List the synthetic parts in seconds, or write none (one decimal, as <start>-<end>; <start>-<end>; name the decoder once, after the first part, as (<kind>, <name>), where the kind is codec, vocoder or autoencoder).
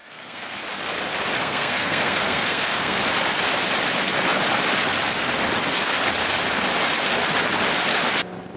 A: 0.0-0.6 (codec, SNAC); 1.4-3.0